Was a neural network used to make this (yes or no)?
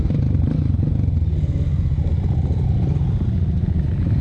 no